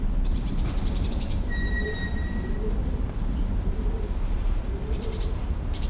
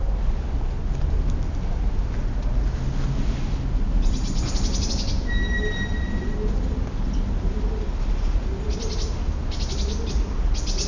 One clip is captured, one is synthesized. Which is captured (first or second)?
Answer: second